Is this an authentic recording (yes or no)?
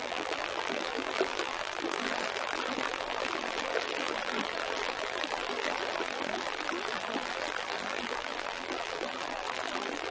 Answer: no